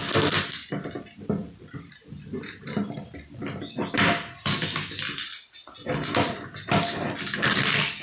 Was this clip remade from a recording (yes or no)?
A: no